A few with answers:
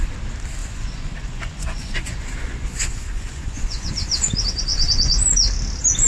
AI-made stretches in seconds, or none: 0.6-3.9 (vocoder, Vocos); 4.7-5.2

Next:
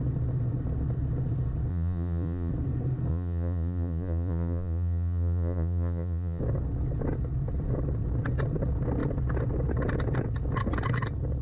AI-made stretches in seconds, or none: 1.7-2.5 (vocoder, Vocos); 3.1-6.4

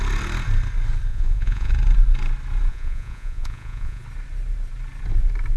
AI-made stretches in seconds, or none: 1.1-1.7 (vocoder, Vocos); 2.7-4.0

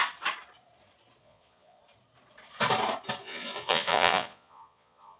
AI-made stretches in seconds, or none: 1.2-1.8 (vocoder, Vocos); 3.2-5.2

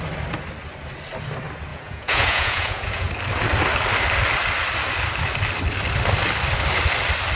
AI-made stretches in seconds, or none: 1.7-3.1 (vocoder, Vocos)